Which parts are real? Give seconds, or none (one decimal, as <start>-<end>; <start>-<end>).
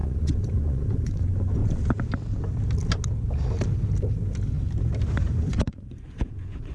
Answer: 1.6-5.2